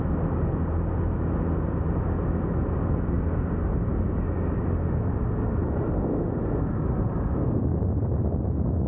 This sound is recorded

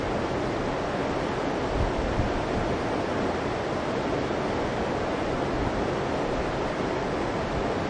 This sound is recorded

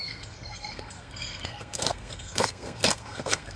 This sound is remade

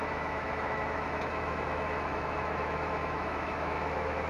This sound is remade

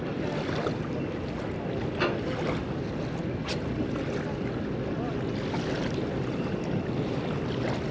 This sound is recorded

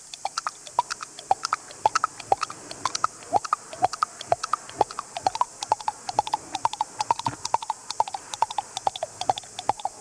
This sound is recorded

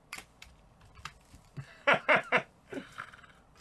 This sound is remade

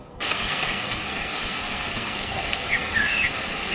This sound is remade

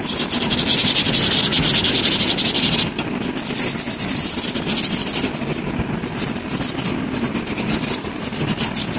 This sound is recorded